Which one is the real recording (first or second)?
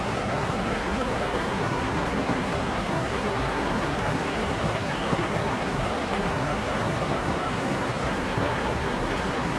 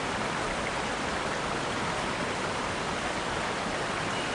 second